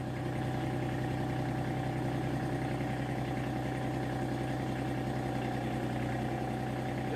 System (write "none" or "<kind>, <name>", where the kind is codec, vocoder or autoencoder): none